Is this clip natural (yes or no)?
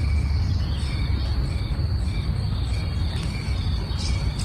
yes